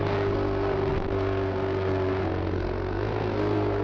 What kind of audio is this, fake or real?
fake